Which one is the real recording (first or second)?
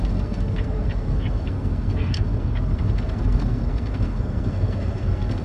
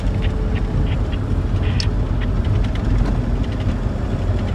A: second